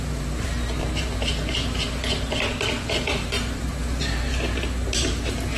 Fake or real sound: fake